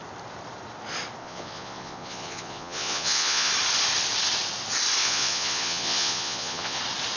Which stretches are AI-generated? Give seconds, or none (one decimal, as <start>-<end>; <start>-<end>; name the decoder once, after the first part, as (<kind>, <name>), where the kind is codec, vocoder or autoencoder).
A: 1.2-3.5 (vocoder, Vocos); 5.0-6.8